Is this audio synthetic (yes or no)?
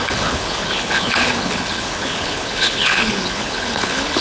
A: yes